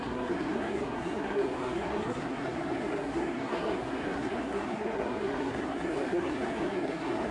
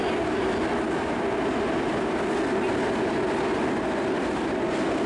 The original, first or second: second